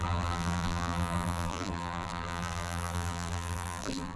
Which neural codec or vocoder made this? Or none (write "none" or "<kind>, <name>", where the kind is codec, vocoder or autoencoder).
vocoder, BigVGAN v2